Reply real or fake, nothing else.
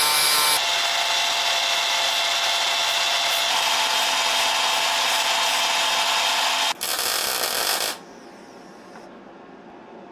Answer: real